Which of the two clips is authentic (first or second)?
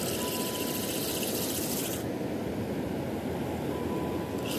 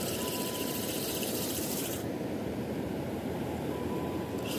first